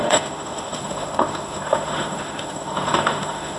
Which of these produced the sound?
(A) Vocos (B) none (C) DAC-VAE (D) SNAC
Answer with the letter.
C